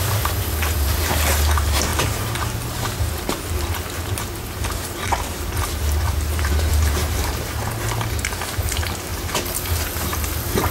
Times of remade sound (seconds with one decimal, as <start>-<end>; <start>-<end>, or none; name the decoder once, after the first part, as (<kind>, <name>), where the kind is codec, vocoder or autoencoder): 0.0-7.6 (vocoder, BigVGAN v2); 8.5-9.1; 9.6-10.7